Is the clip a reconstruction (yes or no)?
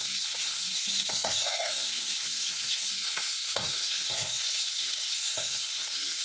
yes